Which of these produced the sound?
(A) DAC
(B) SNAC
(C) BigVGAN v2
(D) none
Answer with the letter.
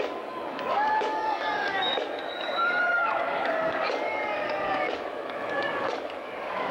A